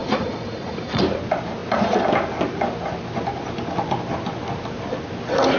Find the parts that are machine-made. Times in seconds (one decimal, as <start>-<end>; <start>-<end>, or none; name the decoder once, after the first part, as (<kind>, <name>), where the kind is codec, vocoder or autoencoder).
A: 0.0-1.0 (vocoder, Vocos)